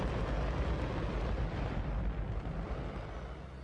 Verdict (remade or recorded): recorded